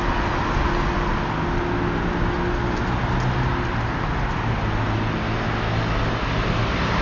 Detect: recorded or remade recorded